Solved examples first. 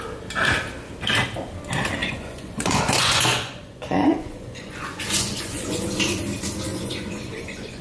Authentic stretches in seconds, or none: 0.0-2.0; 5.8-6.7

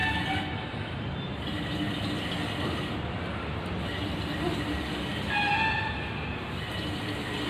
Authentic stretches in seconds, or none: 0.0-7.5

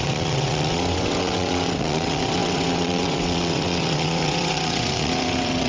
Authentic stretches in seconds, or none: none

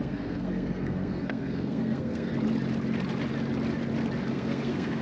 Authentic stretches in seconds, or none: 2.3-4.3

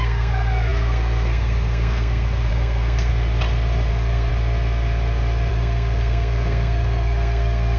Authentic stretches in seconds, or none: 3.1-3.9; 4.3-5.5

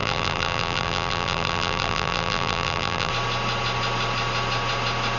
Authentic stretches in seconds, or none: 3.1-5.2